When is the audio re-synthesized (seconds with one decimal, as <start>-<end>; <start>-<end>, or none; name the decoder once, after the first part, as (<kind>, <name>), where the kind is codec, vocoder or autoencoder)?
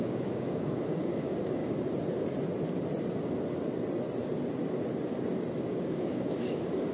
0.0-1.6 (codec, DAC); 5.7-6.9